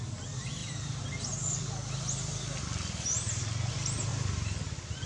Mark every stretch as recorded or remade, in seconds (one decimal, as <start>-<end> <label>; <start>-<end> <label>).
0.0-0.6 recorded; 0.6-1.2 remade; 1.2-4.1 recorded; 4.1-5.1 remade